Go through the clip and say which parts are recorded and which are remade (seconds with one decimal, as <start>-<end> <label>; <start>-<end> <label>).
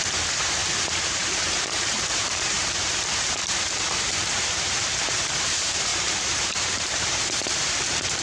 0.0-8.2 remade